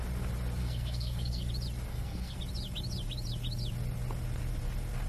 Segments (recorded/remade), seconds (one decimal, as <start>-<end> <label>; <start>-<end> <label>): 0.0-0.6 recorded; 0.6-1.5 remade; 1.5-1.9 recorded; 1.9-2.4 remade; 2.4-5.1 recorded